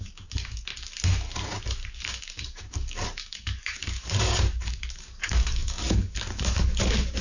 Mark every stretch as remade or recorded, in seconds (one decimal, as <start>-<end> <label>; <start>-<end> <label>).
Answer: 0.0-0.7 remade; 0.7-1.9 recorded; 1.9-7.2 remade